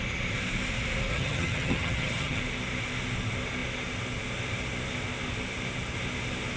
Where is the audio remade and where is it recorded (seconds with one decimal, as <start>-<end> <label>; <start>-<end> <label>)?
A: 0.0-1.1 recorded; 1.1-2.4 remade; 2.4-6.6 recorded